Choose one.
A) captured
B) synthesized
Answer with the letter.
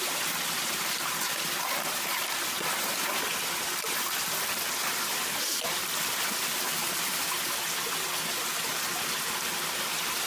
A